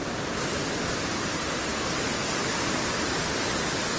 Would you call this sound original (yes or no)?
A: yes